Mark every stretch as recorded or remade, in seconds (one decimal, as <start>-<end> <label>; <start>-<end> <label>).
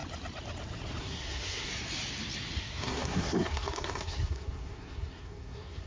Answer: 0.0-1.0 recorded; 1.0-1.7 remade; 1.7-2.6 recorded; 2.6-5.9 remade